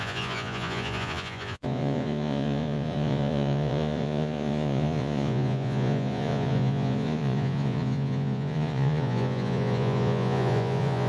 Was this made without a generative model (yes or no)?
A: no